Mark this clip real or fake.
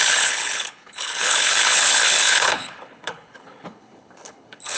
fake